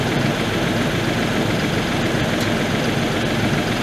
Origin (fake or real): real